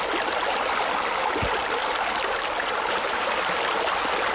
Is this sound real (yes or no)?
yes